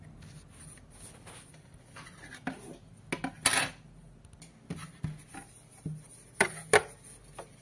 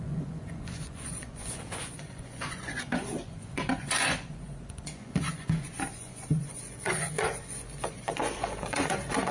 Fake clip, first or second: second